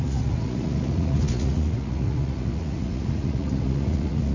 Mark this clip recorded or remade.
remade